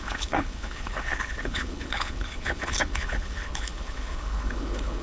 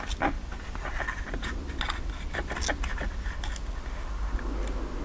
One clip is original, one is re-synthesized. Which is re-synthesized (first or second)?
first